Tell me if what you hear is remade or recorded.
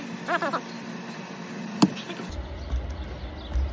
recorded